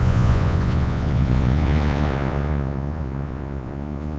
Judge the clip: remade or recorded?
remade